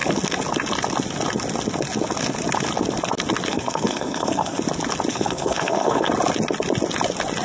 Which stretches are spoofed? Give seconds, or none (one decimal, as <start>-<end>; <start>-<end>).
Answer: 3.5-4.6; 5.1-6.1